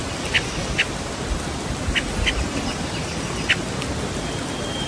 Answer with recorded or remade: recorded